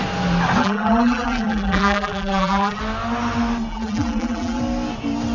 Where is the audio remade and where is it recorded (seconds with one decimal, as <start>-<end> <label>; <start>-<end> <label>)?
0.0-0.6 recorded; 0.6-2.8 remade; 2.8-3.7 recorded; 3.7-4.6 remade; 4.6-5.3 recorded